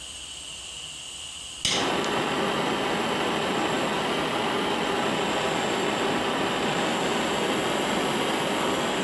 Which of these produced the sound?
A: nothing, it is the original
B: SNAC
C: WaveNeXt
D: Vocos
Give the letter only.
A